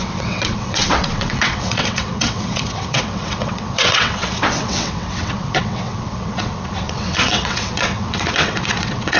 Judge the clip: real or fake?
fake